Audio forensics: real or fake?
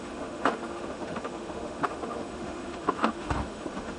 fake